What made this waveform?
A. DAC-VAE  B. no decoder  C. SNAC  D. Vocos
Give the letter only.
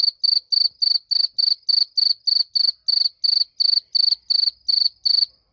B